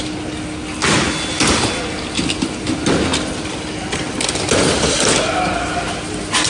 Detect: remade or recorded recorded